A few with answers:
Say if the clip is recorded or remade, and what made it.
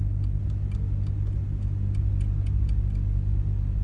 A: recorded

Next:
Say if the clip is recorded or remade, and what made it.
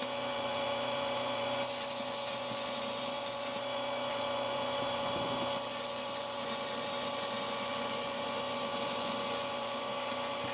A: remade, vocoder, Vocos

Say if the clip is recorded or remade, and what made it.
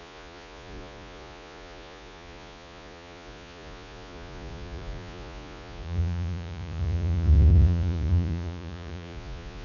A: remade, vocoder, Vocos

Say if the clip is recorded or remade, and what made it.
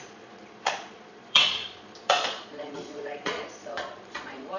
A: remade, vocoder, Vocos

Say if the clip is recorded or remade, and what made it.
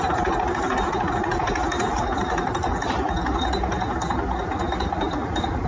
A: recorded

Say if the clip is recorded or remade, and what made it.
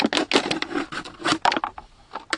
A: recorded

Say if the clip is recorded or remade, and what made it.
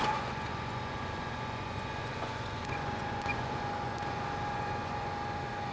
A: remade, vocoder, Vocos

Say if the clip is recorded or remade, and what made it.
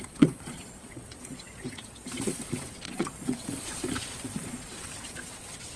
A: remade, vocoder, Vocos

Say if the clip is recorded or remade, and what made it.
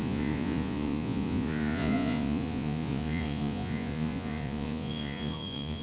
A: remade, vocoder, Vocos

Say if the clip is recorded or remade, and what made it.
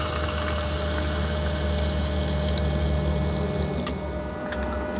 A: recorded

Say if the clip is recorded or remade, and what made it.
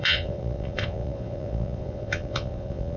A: remade, vocoder, Vocos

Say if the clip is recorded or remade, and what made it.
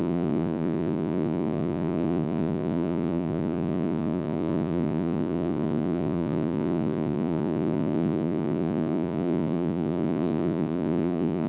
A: remade, vocoder, Vocos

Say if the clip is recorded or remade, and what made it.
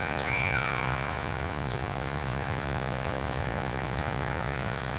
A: remade, vocoder, Vocos